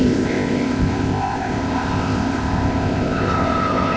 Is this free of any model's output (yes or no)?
no